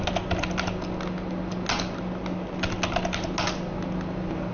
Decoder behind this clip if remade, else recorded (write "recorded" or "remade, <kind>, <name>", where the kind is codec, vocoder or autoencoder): recorded